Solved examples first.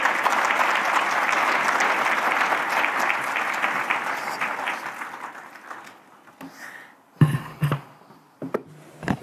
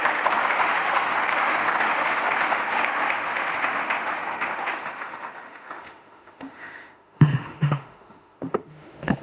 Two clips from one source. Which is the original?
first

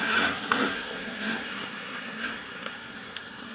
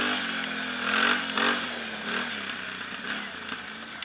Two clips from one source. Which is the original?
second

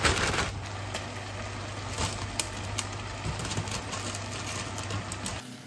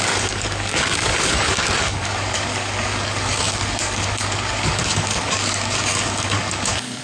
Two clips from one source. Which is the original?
first